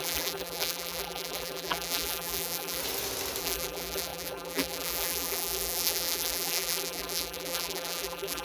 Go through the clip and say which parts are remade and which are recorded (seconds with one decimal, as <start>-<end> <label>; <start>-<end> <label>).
0.0-2.8 remade; 2.8-3.4 recorded; 3.4-8.4 remade